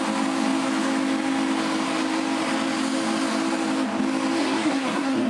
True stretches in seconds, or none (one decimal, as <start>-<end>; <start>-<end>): 0.0-4.4